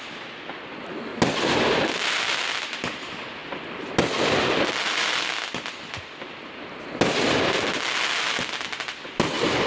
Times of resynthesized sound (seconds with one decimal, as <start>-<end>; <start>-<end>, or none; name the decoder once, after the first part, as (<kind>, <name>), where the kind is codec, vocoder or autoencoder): none